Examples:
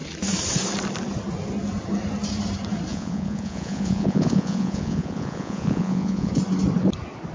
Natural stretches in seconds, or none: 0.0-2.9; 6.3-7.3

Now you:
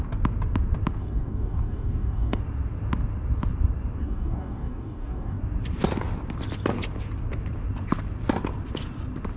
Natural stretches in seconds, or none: 0.0-1.0; 2.4-4.0; 5.4-9.4

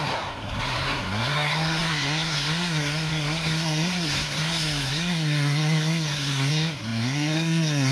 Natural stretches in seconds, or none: none